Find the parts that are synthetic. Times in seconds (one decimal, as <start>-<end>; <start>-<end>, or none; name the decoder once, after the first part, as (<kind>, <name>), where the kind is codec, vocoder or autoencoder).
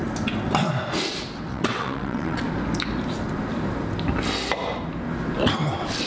1.5-2.4 (vocoder, WaveNeXt)